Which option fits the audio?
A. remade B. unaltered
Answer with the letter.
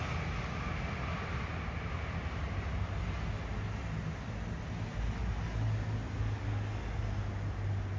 B